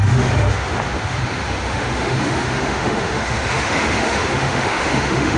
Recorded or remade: remade